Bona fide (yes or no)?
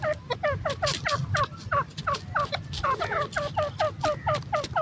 yes